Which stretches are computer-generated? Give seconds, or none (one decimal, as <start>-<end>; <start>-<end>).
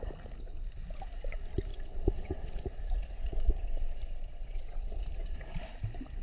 1.7-5.4